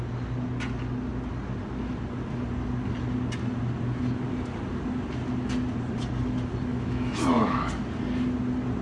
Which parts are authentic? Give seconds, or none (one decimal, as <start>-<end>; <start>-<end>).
0.0-6.7; 7.7-8.8